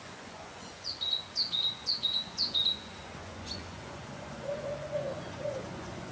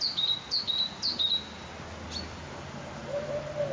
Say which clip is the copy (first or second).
first